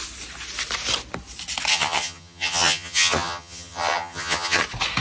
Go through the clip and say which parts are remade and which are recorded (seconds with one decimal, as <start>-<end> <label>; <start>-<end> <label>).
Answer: 0.0-1.7 recorded; 1.7-4.6 remade; 4.6-5.0 recorded